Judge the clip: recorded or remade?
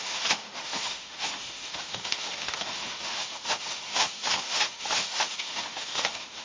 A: remade